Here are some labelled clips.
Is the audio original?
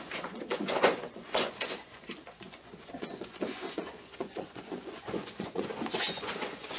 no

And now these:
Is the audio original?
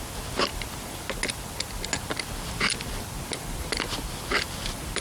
yes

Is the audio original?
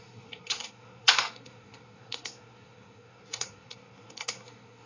no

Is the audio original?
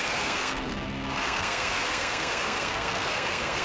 no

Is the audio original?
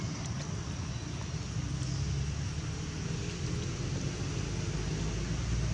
yes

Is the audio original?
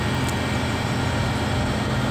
yes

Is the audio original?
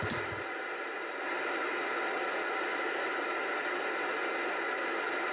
yes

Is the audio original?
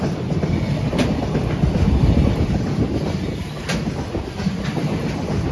yes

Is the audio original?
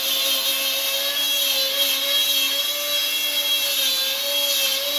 yes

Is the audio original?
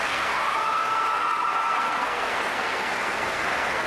no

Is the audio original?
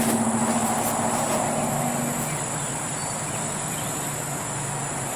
yes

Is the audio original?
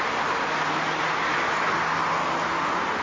yes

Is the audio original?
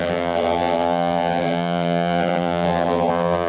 no